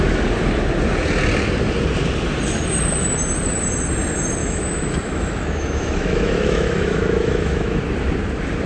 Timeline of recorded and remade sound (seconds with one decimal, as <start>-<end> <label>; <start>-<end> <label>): 0.0-4.4 recorded; 4.4-7.8 remade; 7.8-8.7 recorded

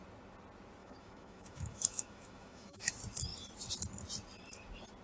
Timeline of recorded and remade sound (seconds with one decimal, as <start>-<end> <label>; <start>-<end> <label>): 0.0-0.8 recorded; 0.8-2.9 remade; 2.9-5.0 recorded

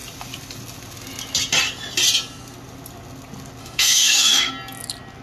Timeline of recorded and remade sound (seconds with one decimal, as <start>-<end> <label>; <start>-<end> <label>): 0.0-3.6 recorded; 3.6-4.5 remade; 4.5-5.2 recorded

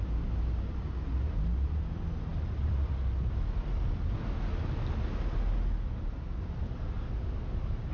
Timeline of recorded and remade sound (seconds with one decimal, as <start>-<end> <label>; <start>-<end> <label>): 0.0-7.9 recorded

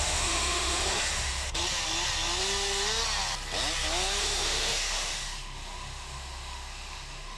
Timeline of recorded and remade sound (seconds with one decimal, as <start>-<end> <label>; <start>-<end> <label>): 0.0-1.6 remade; 1.6-4.2 recorded; 4.2-7.4 remade